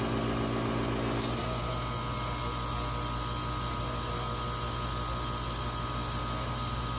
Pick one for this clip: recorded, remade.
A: recorded